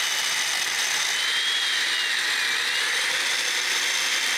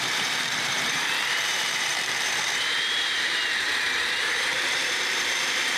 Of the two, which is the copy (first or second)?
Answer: second